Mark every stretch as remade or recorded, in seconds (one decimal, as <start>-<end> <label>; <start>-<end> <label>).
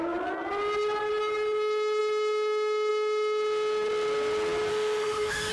0.0-4.7 recorded; 4.7-5.5 remade